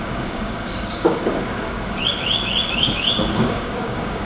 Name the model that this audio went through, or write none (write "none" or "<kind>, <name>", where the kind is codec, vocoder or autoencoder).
codec, DAC